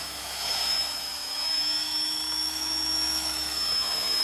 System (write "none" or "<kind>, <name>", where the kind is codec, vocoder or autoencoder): autoencoder, DAC-VAE